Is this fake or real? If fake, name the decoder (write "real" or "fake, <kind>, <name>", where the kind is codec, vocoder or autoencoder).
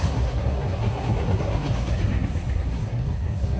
fake, codec, SNAC